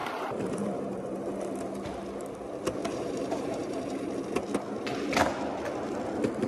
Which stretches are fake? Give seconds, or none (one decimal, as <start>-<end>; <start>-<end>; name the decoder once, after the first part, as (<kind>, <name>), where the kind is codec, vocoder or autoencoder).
0.0-1.4 (vocoder, BigVGAN v2); 2.8-4.1